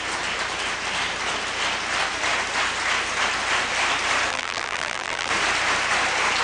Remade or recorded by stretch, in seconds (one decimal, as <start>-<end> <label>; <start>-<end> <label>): 0.0-4.3 recorded; 4.3-5.3 remade; 5.3-6.4 recorded